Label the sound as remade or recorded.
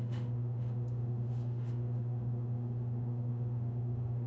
remade